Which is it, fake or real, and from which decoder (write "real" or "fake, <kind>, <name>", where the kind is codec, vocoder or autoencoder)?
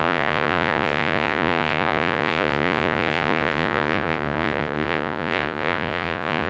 fake, vocoder, Vocos